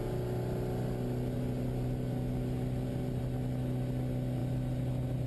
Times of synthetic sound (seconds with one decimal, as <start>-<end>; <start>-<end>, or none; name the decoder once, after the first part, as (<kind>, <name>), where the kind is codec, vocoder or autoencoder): none